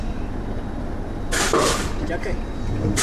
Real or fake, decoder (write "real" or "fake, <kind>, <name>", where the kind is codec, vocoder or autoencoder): fake, vocoder, BigVGAN v2